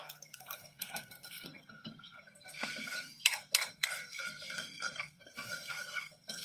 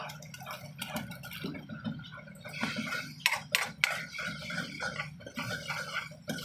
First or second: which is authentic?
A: second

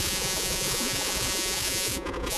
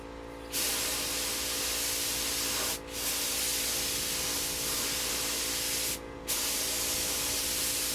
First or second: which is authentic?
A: second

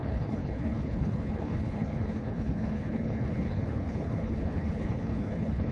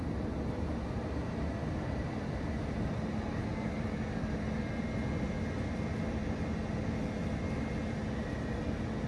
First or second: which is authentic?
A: second